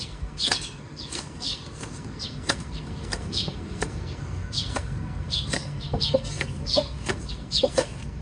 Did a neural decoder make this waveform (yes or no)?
yes